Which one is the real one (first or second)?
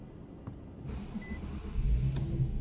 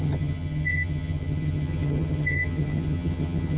first